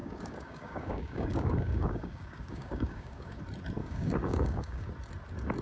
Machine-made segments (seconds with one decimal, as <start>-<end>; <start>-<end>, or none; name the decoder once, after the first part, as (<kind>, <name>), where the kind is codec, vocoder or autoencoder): 0.0-3.4 (codec, DAC); 3.8-4.9